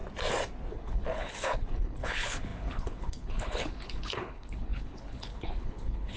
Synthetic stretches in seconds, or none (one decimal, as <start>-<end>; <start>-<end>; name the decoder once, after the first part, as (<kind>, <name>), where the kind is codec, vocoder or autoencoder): 0.7-6.2 (codec, HILCodec)